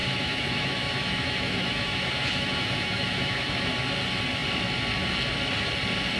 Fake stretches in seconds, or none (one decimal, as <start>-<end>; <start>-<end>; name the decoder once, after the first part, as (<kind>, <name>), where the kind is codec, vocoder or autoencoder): 0.0-3.7 (autoencoder, DAC-VAE)